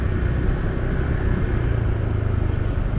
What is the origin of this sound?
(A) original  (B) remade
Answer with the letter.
A